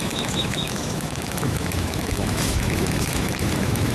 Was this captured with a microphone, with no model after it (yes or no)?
no